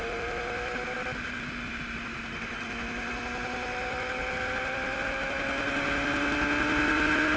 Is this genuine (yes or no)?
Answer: yes